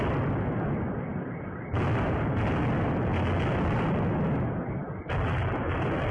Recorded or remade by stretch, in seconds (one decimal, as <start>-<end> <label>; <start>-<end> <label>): 0.0-6.1 recorded